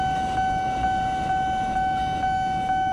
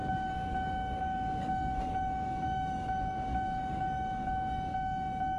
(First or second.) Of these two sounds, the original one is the first